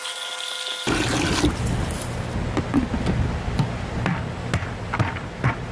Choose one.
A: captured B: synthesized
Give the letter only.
A